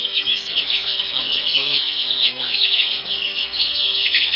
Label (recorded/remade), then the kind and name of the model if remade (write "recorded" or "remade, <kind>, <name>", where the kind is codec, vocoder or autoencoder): remade, codec, SNAC